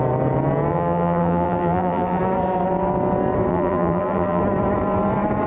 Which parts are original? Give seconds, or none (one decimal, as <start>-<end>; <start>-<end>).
0.0-0.7; 2.2-3.5; 4.4-5.5